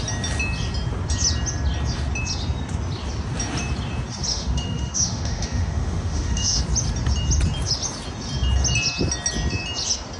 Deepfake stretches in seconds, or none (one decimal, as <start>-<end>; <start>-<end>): 4.3-6.6